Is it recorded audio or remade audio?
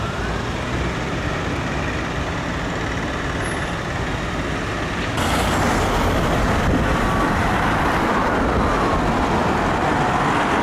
recorded